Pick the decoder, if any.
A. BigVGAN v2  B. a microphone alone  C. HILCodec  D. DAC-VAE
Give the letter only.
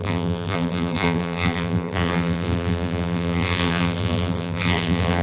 A